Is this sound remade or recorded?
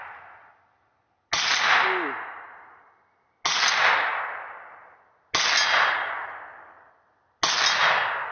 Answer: recorded